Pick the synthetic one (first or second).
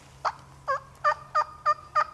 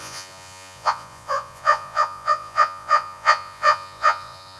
second